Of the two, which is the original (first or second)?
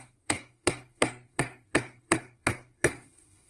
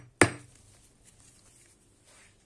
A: second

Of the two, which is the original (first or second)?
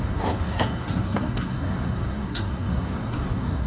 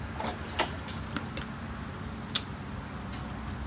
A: second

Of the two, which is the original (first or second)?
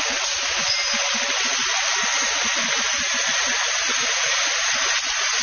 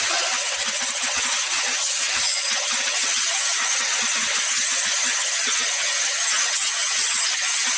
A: first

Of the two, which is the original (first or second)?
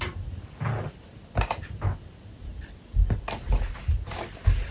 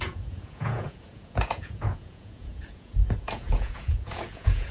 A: first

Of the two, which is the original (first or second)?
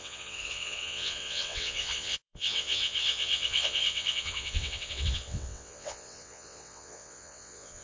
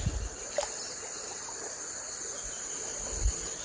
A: second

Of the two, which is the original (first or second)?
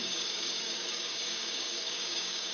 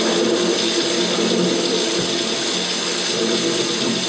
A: second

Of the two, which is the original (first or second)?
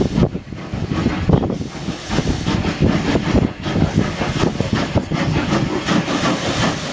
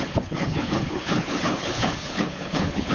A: first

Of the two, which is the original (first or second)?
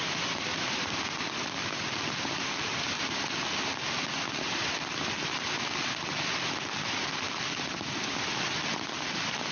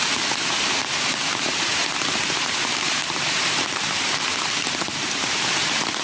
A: first